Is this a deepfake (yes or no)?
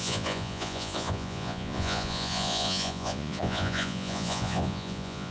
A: yes